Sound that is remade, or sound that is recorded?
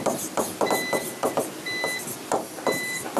recorded